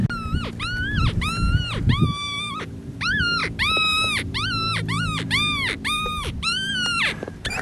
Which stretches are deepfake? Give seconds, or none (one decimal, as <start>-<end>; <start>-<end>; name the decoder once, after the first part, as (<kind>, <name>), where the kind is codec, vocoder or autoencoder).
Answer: 2.0-7.6 (vocoder, BigVGAN v2)